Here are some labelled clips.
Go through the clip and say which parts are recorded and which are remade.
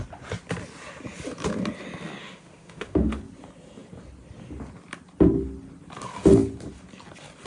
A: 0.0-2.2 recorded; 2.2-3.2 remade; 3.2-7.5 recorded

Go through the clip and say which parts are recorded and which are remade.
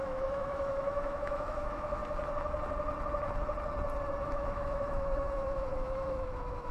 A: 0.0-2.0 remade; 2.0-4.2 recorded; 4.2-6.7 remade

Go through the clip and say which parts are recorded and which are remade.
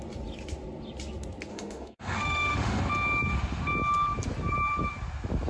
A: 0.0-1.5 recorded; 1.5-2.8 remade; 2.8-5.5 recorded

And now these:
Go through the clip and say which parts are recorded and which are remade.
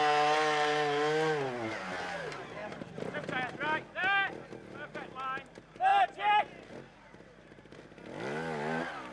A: 0.0-9.1 recorded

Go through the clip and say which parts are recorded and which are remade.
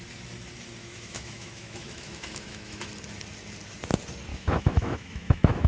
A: 0.0-0.8 recorded; 0.8-2.9 remade; 2.9-4.3 recorded; 4.3-5.7 remade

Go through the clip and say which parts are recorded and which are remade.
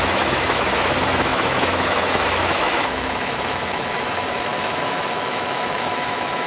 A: 0.0-6.5 remade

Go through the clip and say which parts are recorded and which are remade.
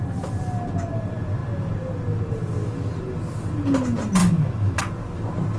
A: 0.0-4.2 recorded; 4.2-4.8 remade; 4.8-5.6 recorded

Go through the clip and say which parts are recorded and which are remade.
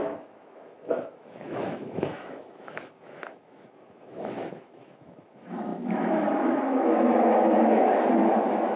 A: 0.0-8.8 remade